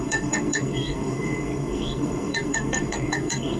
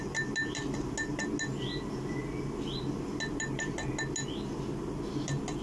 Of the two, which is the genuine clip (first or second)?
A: second